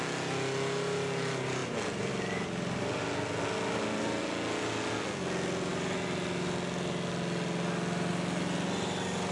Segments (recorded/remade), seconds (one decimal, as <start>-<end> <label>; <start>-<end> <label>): 0.0-9.3 recorded